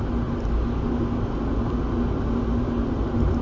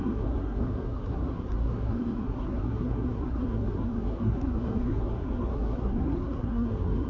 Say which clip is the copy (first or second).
second